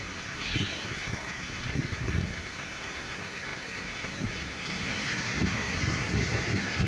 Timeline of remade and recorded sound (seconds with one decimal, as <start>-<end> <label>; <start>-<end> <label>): 0.0-6.9 remade